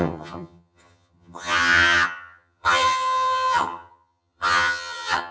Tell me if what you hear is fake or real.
fake